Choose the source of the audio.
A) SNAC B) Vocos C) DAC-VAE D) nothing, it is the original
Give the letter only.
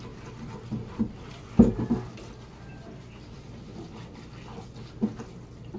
D